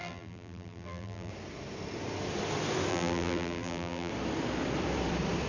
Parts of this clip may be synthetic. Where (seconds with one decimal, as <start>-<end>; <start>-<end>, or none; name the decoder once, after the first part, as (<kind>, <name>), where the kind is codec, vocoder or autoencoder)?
0.0-1.3 (vocoder, BigVGAN v2); 2.9-4.1